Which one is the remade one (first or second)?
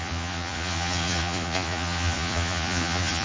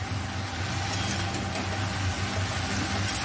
first